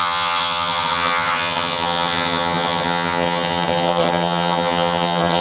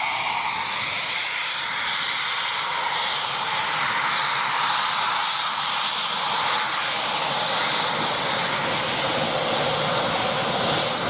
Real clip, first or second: second